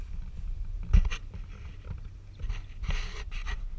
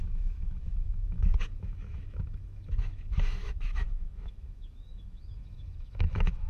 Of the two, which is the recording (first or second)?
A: first